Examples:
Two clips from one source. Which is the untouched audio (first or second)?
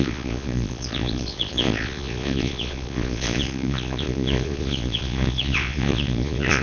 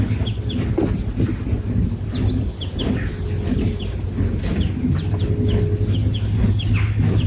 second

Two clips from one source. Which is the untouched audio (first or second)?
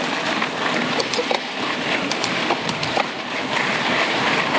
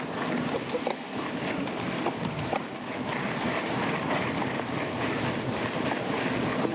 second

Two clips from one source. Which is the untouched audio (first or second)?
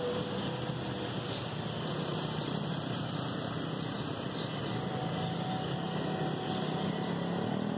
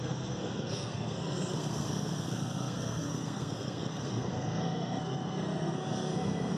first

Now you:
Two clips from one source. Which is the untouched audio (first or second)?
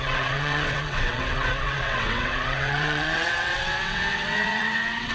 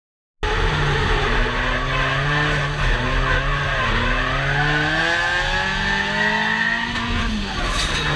second